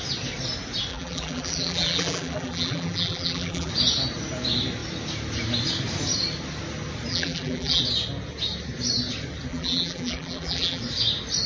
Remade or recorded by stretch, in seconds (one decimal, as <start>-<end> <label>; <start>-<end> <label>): 0.0-0.9 recorded; 0.9-3.7 remade; 3.7-7.1 recorded; 7.1-7.8 remade; 7.8-9.5 recorded; 9.5-10.8 remade; 10.8-11.5 recorded